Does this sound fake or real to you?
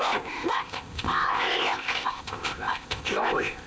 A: fake